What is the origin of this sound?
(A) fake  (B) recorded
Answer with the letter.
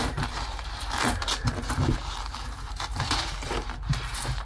A